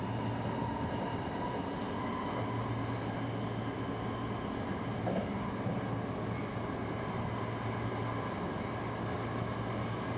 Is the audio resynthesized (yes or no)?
no